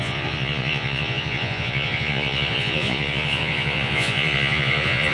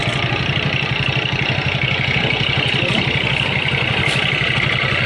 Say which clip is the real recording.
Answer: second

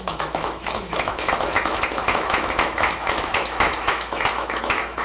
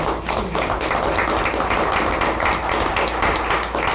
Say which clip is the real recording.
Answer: second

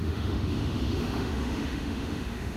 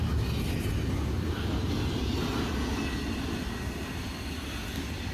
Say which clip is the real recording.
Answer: second